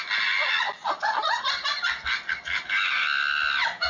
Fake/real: real